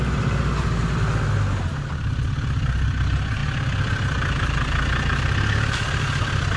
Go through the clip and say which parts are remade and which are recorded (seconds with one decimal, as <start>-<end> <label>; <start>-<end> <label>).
0.0-6.6 recorded